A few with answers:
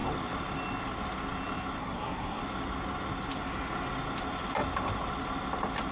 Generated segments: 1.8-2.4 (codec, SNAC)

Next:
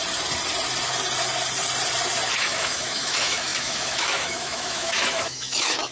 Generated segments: 2.4-5.9 (autoencoder, DAC-VAE)

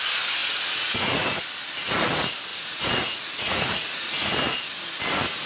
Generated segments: 0.4-1.4 (vocoder, Vocos); 2.5-4.3

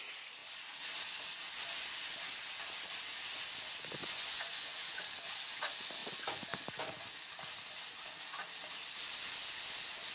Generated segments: 4.0-5.0 (vocoder, Vocos)

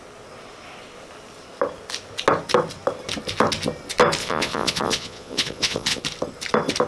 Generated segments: 4.2-6.0 (vocoder, Vocos)